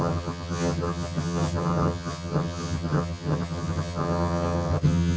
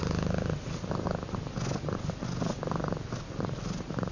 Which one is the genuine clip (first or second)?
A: second